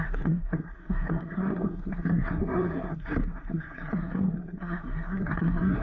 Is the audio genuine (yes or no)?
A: no